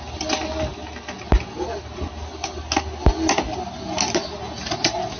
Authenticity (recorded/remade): recorded